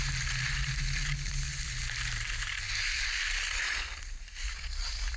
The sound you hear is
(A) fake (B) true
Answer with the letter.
B